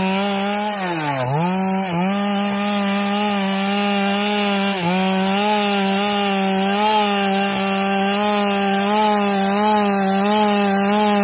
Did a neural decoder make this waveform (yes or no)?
no